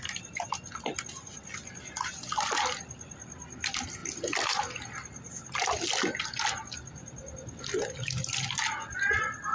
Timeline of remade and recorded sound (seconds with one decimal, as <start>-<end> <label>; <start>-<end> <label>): 0.0-9.5 recorded